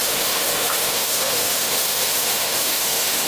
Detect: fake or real fake